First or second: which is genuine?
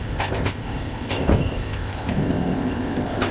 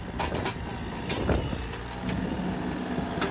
second